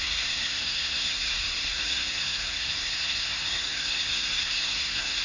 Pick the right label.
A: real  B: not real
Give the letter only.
B